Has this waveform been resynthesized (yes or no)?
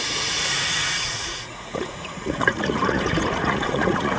yes